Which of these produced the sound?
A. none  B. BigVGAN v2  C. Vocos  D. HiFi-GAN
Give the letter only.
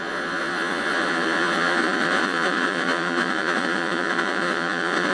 C